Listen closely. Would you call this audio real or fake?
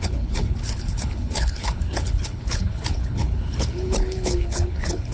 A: fake